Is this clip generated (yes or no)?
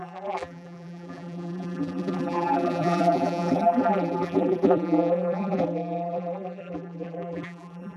yes